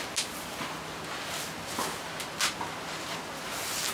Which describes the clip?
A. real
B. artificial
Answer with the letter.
A